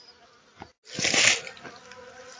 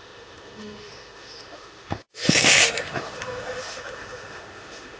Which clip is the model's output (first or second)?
second